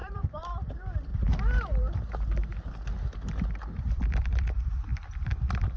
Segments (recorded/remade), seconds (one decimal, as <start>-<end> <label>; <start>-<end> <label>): 0.0-1.1 remade; 1.1-3.9 recorded; 3.9-5.8 remade